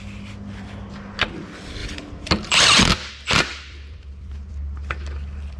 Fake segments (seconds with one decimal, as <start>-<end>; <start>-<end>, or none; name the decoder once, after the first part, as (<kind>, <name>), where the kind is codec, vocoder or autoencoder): 1.8-2.8 (vocoder, BigVGAN v2); 3.5-4.5